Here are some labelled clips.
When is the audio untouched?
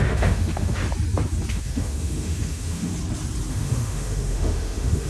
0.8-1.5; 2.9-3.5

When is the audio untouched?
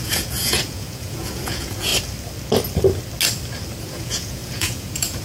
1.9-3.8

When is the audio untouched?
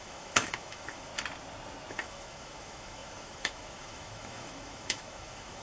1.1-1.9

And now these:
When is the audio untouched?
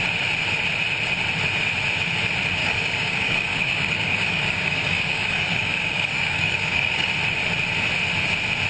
0.0-2.6; 7.1-8.7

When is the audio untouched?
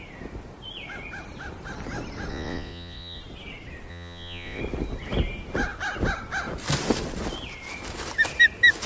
0.0-2.3; 3.2-3.9; 4.6-8.9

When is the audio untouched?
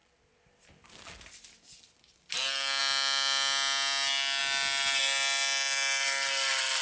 0.0-6.8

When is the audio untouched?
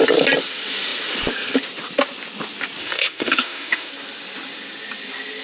0.0-2.8; 3.9-5.4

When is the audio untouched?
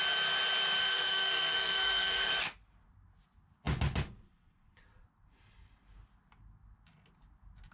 0.0-0.8; 2.3-7.7